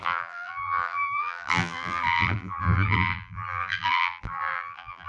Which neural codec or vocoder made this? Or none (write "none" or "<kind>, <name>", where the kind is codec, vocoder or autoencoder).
vocoder, BigVGAN v2